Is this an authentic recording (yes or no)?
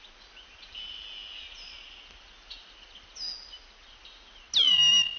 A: yes